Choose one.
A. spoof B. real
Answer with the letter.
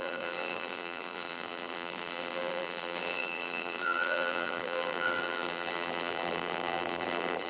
A